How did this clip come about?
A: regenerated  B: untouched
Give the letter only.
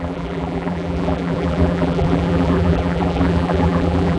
A